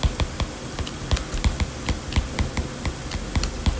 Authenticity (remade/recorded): recorded